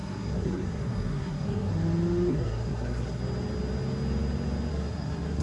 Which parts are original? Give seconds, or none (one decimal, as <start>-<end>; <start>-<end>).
1.7-2.3; 3.2-4.7

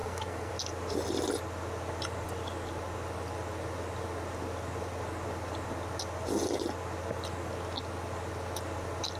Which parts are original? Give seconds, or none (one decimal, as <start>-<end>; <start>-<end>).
0.5-9.2

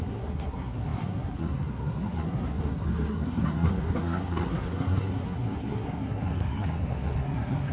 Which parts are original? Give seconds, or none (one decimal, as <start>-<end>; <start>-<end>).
none

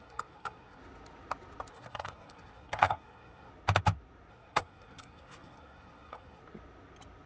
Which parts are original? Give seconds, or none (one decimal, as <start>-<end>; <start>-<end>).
0.8-1.7; 3.5-4.3; 6.4-7.3

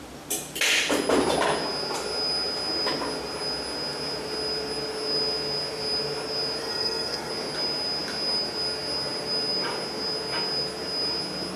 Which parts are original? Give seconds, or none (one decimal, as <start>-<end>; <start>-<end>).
0.0-6.6; 7.3-11.6

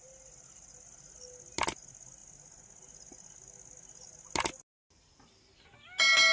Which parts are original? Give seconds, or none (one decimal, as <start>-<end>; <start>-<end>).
0.0-6.3

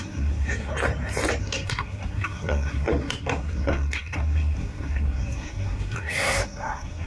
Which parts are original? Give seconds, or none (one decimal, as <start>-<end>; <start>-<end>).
0.7-1.4

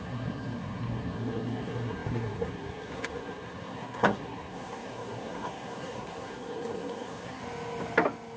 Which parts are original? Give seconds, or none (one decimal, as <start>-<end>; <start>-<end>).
7.4-8.4